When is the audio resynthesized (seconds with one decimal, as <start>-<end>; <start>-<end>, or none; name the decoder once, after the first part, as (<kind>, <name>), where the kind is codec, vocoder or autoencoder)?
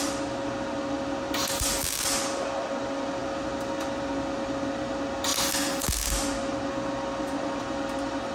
none